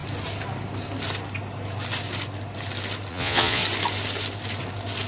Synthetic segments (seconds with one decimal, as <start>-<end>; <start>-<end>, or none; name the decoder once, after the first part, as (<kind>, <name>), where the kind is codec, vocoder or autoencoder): 3.1-3.6 (vocoder, Vocos)